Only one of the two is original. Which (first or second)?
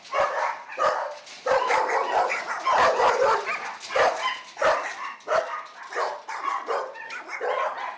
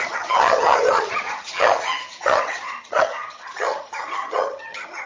first